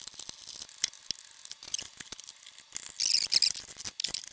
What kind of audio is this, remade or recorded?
recorded